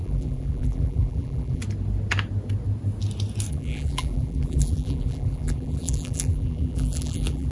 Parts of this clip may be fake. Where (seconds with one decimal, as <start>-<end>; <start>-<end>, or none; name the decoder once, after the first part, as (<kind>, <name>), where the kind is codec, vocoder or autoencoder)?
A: 0.0-1.6 (vocoder, BigVGAN v2); 3.5-7.5

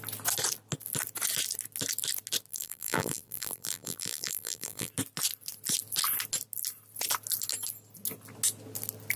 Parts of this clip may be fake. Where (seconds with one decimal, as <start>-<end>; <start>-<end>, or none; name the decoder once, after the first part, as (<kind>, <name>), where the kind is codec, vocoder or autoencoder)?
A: 2.5-4.9 (vocoder, BigVGAN v2)

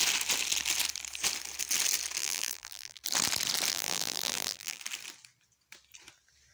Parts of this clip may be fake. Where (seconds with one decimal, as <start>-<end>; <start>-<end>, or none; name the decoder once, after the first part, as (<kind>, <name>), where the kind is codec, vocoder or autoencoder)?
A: 2.2-3.0 (vocoder, BigVGAN v2); 3.7-4.8

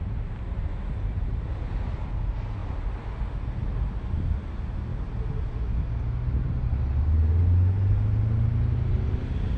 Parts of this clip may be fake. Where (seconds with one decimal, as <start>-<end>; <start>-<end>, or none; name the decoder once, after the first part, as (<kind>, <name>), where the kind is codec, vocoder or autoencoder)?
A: none

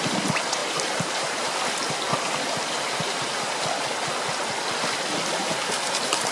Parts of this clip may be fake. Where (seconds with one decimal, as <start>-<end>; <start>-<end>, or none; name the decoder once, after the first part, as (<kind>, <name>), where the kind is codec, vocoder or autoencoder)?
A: 0.6-1.5 (vocoder, BigVGAN v2); 2.1-3.6

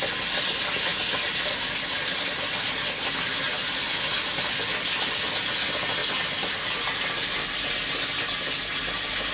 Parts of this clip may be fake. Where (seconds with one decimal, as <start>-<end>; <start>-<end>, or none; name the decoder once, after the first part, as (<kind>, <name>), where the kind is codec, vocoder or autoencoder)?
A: none

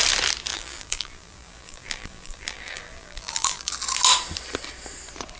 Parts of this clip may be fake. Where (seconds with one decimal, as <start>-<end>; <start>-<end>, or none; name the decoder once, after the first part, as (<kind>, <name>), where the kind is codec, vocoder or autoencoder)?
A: 0.5-3.7 (vocoder, BigVGAN v2)